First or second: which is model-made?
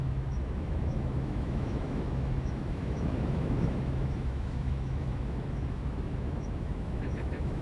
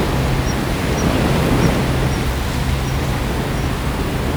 first